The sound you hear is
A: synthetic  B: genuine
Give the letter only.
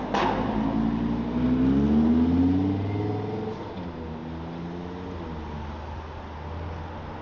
B